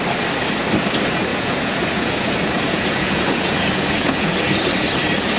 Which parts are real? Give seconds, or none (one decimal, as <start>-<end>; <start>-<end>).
0.0-1.3; 4.3-5.4